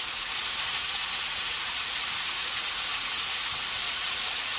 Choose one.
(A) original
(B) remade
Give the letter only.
B